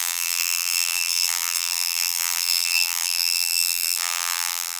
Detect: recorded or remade remade